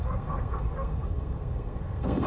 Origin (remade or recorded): remade